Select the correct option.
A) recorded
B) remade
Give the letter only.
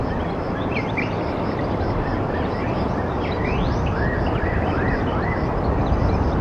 B